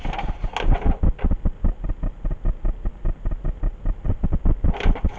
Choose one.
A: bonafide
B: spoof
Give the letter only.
A